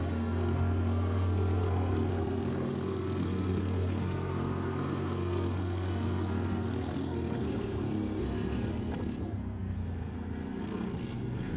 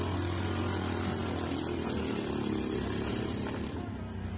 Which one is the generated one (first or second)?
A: first